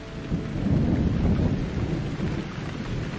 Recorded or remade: recorded